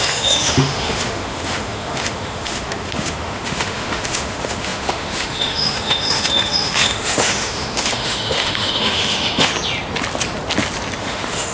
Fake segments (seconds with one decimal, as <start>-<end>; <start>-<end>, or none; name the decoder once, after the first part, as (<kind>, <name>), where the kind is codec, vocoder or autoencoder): 0.0-9.5 (autoencoder, DAC-VAE); 11.0-11.5

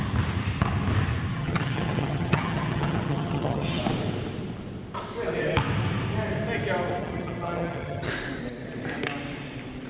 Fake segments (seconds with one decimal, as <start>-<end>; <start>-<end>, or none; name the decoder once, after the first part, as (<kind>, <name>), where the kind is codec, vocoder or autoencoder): 1.3-3.8 (vocoder, HiFi-GAN); 7.0-8.1

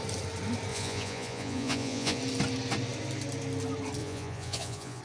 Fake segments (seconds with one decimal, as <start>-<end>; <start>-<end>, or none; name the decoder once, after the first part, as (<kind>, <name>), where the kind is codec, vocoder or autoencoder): 0.7-2.2 (vocoder, Vocos); 4.0-5.0

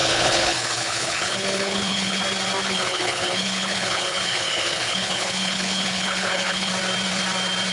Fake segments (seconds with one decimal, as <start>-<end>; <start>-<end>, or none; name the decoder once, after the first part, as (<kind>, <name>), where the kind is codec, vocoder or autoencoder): 0.0-2.2 (codec, HILCodec); 2.6-6.7

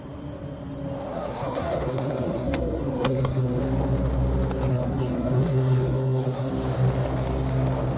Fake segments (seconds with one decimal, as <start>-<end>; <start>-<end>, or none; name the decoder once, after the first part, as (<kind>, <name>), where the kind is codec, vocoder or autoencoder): 1.1-3.6 (codec, SNAC); 4.7-6.5

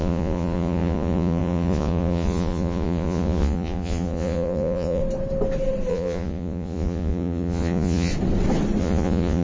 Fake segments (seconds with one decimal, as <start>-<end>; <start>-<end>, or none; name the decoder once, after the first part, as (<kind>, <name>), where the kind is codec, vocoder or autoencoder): 0.0-5.0 (vocoder, Vocos); 5.9-8.1; 8.8-9.4

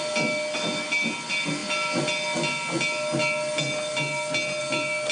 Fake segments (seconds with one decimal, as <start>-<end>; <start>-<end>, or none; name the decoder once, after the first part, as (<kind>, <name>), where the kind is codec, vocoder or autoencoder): none